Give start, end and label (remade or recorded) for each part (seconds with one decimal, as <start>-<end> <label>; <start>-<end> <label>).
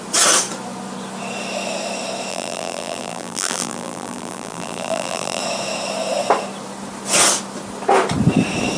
0.0-2.3 recorded; 2.3-5.4 remade; 5.4-8.8 recorded